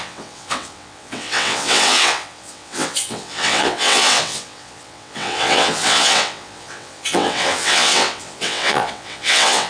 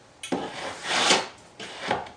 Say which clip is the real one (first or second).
second